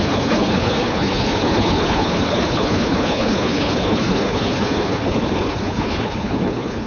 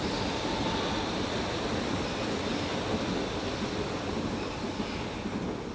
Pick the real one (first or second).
second